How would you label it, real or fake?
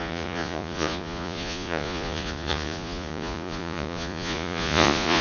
fake